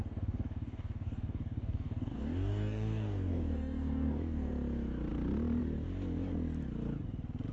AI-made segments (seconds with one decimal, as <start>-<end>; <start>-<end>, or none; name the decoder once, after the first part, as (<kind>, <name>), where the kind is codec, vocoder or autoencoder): 0.0-4.5 (codec, DAC)